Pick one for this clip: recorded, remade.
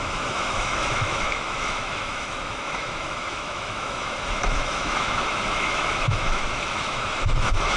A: remade